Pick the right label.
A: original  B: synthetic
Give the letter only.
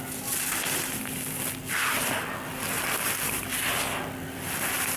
B